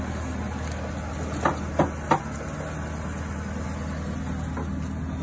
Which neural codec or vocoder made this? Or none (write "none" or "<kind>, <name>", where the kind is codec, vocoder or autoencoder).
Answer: none